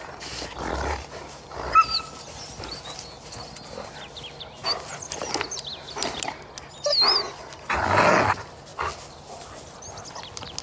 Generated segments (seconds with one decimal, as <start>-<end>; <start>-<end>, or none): none